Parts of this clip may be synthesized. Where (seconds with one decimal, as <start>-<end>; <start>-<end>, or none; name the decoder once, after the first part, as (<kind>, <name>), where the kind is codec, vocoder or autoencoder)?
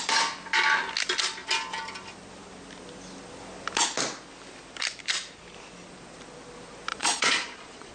6.9-7.9 (vocoder, Vocos)